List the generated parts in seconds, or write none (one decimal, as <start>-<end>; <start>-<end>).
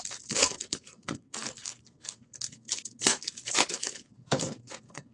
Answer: 0.0-5.1